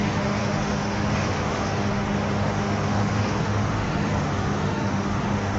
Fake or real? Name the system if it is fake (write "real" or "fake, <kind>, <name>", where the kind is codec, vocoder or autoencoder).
fake, autoencoder, DAC-VAE